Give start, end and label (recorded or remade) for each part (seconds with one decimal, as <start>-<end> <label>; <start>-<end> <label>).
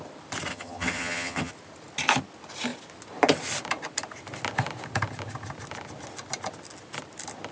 0.0-0.5 recorded; 0.5-1.5 remade; 1.5-7.5 recorded